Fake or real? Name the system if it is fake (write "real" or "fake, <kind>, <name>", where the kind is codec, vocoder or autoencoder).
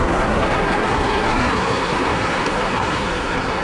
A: fake, codec, SNAC